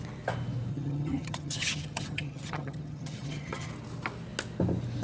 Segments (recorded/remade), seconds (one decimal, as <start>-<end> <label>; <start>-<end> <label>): 0.0-0.7 recorded; 0.7-3.7 remade; 3.7-5.0 recorded